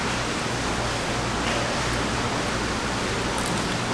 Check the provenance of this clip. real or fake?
real